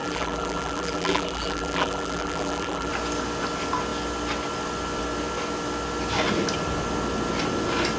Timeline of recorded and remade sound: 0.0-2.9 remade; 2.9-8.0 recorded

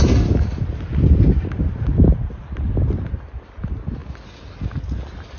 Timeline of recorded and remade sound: 0.0-5.4 recorded

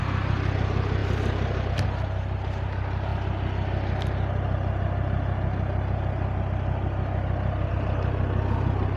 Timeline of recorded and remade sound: 0.0-9.0 recorded

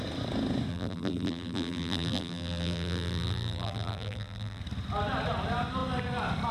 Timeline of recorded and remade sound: 0.0-0.7 recorded; 0.7-4.6 remade; 4.6-6.5 recorded